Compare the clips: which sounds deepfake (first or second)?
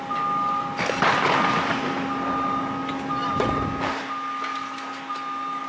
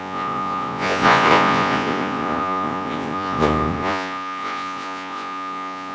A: second